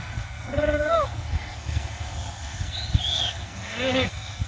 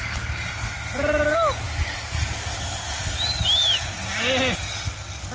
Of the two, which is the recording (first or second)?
second